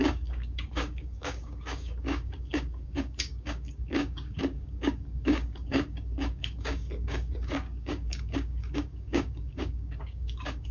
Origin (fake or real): fake